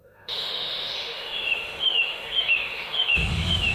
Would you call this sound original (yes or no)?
no